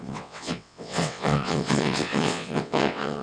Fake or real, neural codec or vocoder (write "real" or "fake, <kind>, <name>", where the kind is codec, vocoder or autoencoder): fake, vocoder, WaveNeXt